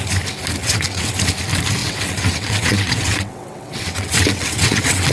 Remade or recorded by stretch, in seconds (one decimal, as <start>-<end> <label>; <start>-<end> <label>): 0.0-0.6 recorded; 0.6-1.1 remade; 1.1-1.8 recorded; 1.8-5.1 remade

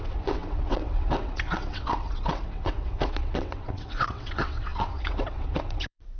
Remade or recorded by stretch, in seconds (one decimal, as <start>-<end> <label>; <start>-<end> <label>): 0.0-6.2 remade